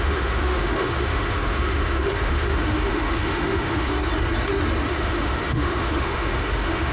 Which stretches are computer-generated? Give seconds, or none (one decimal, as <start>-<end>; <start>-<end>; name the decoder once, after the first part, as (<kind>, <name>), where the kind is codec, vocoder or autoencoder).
0.0-3.9 (autoencoder, DAC-VAE); 4.9-6.9